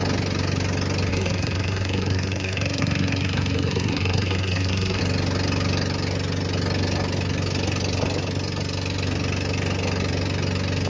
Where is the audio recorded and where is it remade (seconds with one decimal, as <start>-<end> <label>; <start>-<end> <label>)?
0.0-1.1 recorded; 1.1-5.0 remade; 5.0-10.9 recorded